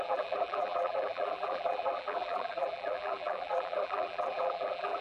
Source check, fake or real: fake